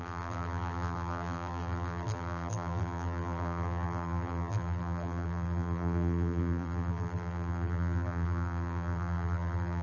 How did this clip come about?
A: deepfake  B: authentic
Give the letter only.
A